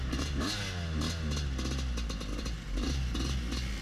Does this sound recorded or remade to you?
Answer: recorded